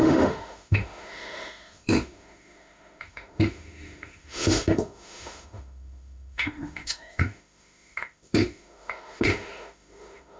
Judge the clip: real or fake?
fake